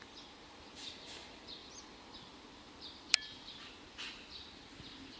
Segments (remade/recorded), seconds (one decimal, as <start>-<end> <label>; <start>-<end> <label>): 0.0-5.2 recorded

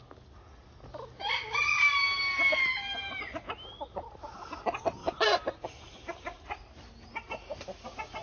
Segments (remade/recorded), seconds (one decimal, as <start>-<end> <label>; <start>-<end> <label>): 0.0-2.6 recorded; 2.6-3.2 remade; 3.2-5.0 recorded; 5.0-6.9 remade; 6.9-8.2 recorded

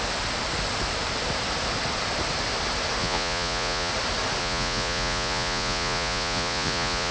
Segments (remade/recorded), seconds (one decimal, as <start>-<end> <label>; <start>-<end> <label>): 0.0-3.0 recorded; 3.0-3.9 remade; 3.9-4.4 recorded; 4.4-7.1 remade

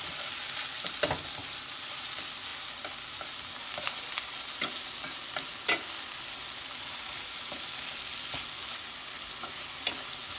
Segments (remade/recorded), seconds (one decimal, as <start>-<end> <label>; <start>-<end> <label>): 0.0-1.4 recorded; 1.4-2.1 remade; 2.1-10.4 recorded

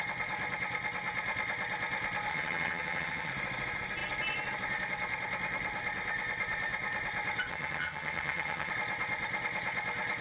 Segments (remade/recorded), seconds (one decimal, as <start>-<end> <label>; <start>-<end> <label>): 0.0-2.3 recorded; 2.3-3.3 remade; 3.3-7.5 recorded; 7.5-8.7 remade; 8.7-10.2 recorded